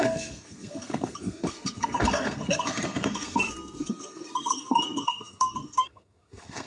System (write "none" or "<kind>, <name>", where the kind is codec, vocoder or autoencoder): codec, SNAC